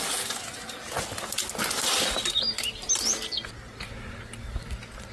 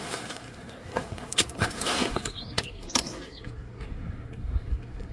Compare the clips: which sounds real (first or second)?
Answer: first